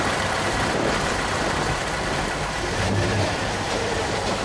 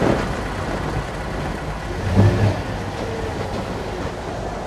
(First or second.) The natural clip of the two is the second